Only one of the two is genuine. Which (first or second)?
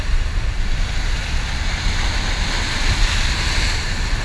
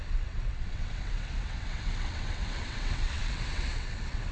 first